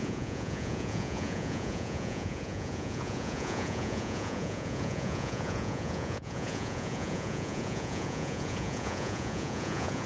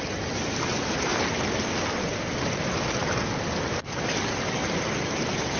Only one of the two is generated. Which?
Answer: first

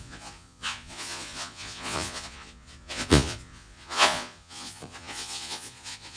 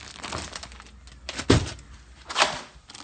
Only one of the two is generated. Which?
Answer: first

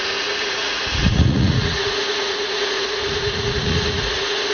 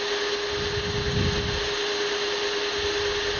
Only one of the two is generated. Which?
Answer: first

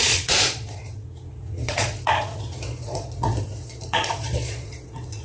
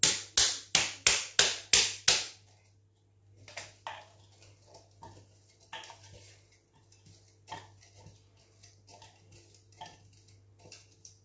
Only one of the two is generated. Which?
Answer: first